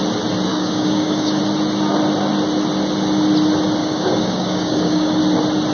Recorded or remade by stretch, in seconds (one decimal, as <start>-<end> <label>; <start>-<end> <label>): 0.0-0.5 recorded; 0.5-1.4 remade; 1.4-3.8 recorded; 3.8-5.2 remade; 5.2-5.7 recorded